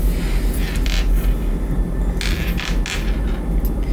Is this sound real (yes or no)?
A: yes